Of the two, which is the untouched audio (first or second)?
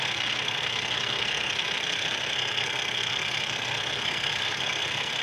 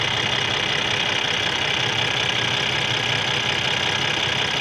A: second